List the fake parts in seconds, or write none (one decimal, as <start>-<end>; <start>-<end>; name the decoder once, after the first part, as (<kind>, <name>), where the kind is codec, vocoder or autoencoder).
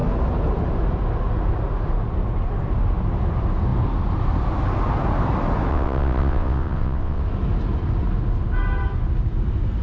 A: 5.7-7.2 (vocoder, WaveNeXt)